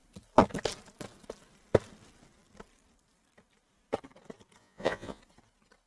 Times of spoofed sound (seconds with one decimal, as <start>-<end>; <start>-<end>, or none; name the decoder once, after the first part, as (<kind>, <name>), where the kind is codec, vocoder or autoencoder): 4.6-5.2 (vocoder, Vocos)